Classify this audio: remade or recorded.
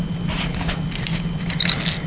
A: recorded